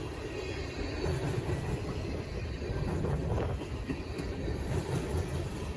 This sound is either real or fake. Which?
real